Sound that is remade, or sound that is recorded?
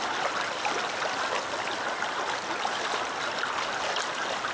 recorded